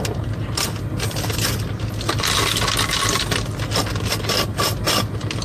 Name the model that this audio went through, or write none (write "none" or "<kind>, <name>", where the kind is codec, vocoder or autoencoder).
none